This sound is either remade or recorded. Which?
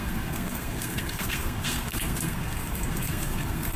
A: remade